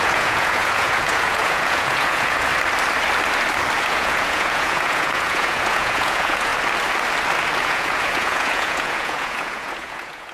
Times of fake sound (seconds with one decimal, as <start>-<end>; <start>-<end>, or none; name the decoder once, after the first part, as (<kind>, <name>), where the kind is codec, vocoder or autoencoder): 0.0-2.5 (vocoder, Vocos); 3.8-6.5; 7.6-10.3